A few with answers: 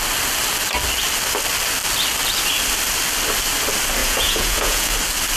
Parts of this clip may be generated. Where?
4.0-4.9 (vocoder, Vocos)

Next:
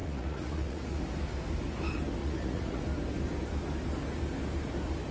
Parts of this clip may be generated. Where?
0.0-1.0 (vocoder, Vocos); 2.2-2.8

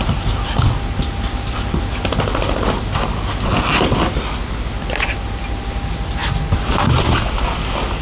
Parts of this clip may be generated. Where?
none

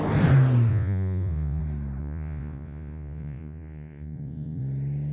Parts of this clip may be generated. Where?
0.7-1.6 (vocoder, Vocos); 2.0-4.6

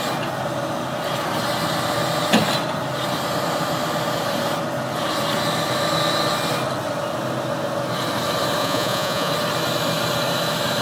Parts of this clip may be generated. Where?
8.6-9.3 (vocoder, Vocos)